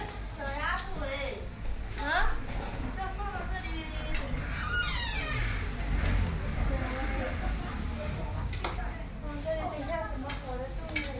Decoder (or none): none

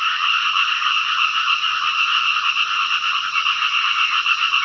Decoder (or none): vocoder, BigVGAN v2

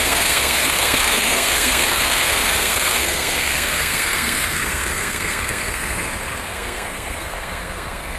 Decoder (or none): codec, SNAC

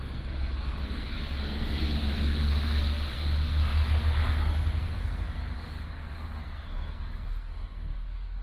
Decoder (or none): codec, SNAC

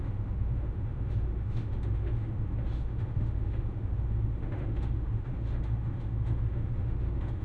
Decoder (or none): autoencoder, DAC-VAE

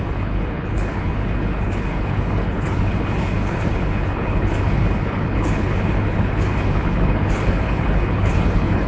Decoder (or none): codec, HILCodec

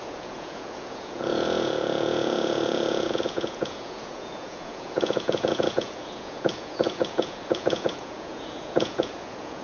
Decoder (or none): vocoder, Vocos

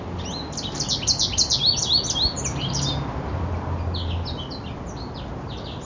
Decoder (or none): none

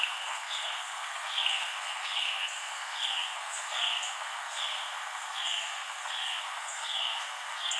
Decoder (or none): codec, SNAC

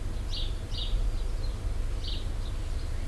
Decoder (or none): none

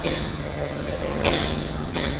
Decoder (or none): vocoder, HiFi-GAN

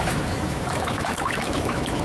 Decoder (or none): autoencoder, DAC-VAE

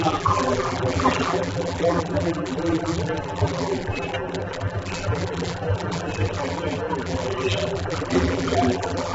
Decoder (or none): vocoder, BigVGAN v2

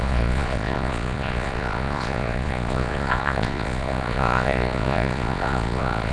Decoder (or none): vocoder, Vocos